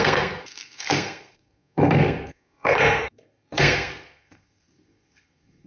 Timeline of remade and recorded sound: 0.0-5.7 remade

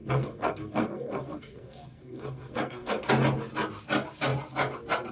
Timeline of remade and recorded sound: 0.0-3.1 remade; 3.1-5.1 recorded

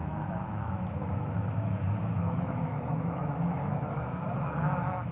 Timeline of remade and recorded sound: 0.0-5.1 remade

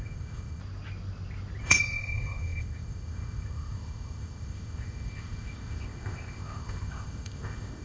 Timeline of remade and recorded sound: 0.0-0.6 remade; 0.6-1.6 recorded; 1.6-7.8 remade

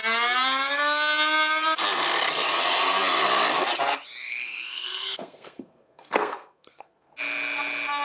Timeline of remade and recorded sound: 0.0-4.2 recorded; 4.2-7.1 remade; 7.1-8.0 recorded

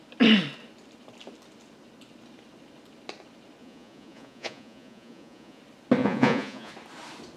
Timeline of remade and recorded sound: 0.0-3.6 recorded; 3.6-5.6 remade; 5.6-6.0 recorded; 6.0-6.7 remade; 6.7-7.4 recorded